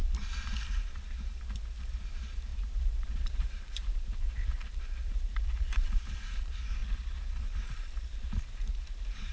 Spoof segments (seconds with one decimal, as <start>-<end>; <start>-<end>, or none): 2.1-6.8; 7.4-9.3